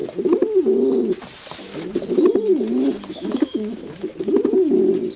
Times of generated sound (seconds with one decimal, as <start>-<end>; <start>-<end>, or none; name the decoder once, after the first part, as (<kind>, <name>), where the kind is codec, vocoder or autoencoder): 3.1-4.1 (autoencoder, DAC-VAE)